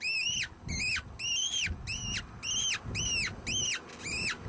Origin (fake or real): real